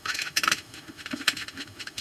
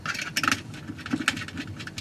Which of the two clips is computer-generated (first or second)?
first